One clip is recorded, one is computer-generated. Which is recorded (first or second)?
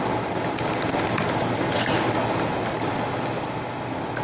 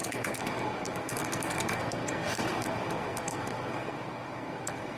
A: first